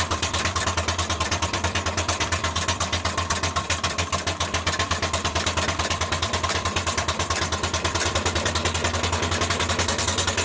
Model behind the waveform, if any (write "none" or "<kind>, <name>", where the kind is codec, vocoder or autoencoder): vocoder, BigVGAN v2